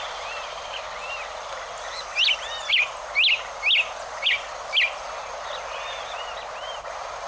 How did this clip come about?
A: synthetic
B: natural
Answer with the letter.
B